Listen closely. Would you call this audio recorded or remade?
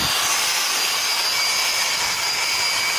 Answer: recorded